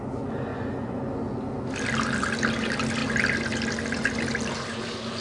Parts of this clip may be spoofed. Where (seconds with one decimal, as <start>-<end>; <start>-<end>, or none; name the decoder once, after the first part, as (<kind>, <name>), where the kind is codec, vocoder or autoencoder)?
0.5-1.0 (vocoder, Vocos)